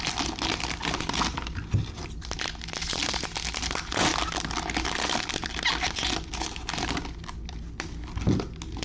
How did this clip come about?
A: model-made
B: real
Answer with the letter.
B